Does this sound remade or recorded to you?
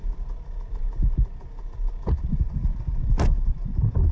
recorded